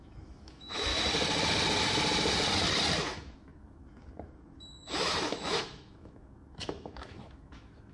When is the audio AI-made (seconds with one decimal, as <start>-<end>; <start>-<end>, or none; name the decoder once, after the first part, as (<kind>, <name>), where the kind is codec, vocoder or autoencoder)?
0.0-0.9 (autoencoder, DAC-VAE); 3.0-7.9